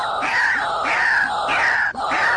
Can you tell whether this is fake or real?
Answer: real